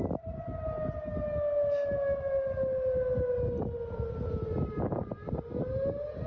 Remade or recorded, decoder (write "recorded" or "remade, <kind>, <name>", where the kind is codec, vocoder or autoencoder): recorded